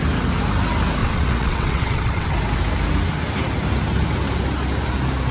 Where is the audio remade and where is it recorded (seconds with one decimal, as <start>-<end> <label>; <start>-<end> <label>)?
0.0-1.0 recorded; 1.0-2.3 remade; 2.3-5.3 recorded